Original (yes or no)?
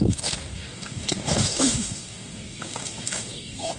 no